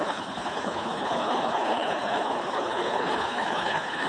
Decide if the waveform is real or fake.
fake